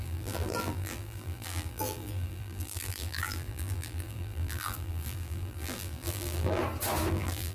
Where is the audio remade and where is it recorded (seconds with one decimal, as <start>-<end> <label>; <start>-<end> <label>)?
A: 0.0-6.6 remade; 6.6-7.1 recorded; 7.1-7.5 remade